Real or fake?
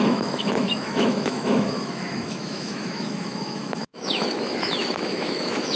fake